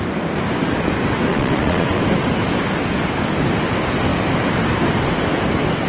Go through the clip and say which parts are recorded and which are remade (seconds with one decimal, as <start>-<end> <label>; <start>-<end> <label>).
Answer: 0.0-1.3 recorded; 1.3-2.0 remade; 2.0-5.9 recorded